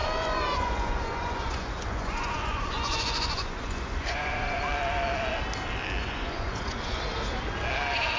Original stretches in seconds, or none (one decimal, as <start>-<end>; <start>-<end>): 4.6-6.0; 7.0-8.2